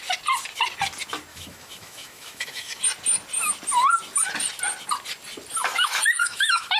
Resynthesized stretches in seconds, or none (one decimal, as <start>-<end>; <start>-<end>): 1.3-2.8; 5.6-6.8